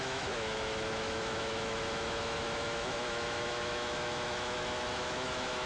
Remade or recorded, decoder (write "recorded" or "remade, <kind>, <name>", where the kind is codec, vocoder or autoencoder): remade, autoencoder, DAC-VAE